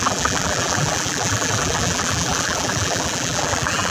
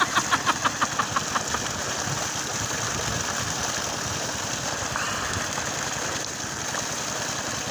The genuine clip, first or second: second